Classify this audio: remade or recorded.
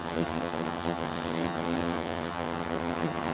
remade